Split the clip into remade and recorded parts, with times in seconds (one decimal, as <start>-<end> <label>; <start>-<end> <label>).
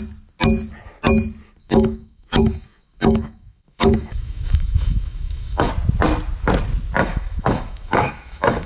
0.0-1.6 recorded; 1.6-5.7 remade; 5.7-7.0 recorded; 7.0-8.7 remade